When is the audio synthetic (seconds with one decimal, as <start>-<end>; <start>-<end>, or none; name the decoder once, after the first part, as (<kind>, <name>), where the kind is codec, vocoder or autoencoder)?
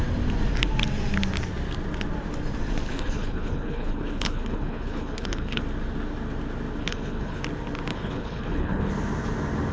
2.9-5.6 (codec, HILCodec); 6.8-7.4; 7.9-8.9